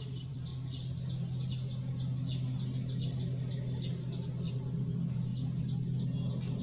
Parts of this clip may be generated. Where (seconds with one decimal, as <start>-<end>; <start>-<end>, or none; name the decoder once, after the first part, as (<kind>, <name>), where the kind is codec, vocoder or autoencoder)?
0.0-0.5 (vocoder, BigVGAN v2); 4.5-5.3

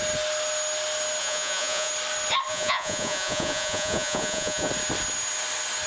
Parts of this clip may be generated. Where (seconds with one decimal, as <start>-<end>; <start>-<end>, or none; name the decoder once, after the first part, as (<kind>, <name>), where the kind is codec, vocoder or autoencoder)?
1.2-1.9 (vocoder, Vocos); 2.5-4.7